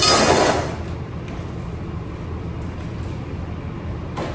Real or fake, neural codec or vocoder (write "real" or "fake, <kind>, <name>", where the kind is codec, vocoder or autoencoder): real